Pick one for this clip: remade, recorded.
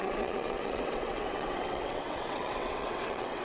remade